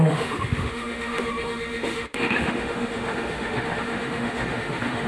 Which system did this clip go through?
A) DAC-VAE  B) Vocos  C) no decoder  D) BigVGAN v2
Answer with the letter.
A